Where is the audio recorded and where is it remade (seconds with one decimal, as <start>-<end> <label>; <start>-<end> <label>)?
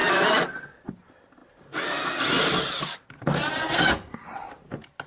0.0-5.1 recorded